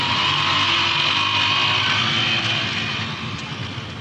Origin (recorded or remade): recorded